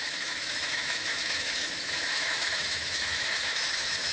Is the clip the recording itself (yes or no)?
no